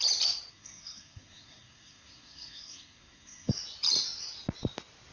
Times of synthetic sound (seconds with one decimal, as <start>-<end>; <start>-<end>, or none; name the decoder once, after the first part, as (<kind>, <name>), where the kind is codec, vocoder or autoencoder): 0.5-3.5 (codec, SNAC)